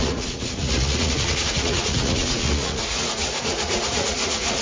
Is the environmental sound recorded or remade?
remade